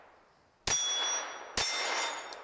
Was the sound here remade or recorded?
recorded